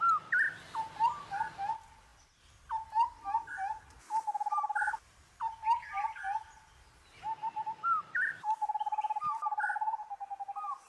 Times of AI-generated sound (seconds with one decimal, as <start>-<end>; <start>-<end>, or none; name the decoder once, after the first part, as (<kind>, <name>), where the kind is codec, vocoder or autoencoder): 7.4-9.6 (vocoder, BigVGAN v2)